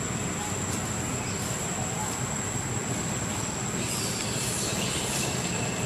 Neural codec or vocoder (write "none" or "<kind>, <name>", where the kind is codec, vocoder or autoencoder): none